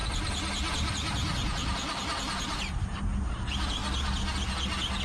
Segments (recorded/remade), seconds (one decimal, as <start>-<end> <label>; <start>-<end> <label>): 0.0-5.0 recorded